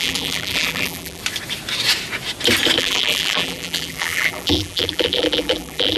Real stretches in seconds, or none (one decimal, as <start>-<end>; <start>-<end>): 1.2-2.8